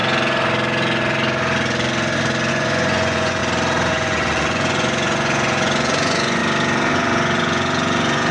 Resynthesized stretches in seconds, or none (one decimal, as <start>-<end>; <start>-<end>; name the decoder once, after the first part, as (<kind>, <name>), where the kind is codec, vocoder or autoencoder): 2.5-3.4 (vocoder, Vocos); 3.9-6.4; 6.9-8.3